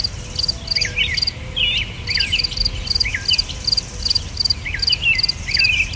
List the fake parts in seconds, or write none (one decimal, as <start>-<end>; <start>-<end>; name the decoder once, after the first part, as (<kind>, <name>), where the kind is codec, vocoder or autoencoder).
none